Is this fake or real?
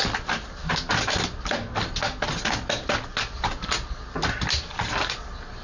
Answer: real